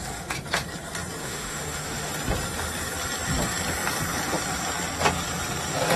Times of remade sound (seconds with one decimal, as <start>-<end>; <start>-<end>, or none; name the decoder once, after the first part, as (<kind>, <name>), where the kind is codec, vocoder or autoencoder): 1.2-2.1 (autoencoder, DAC-VAE)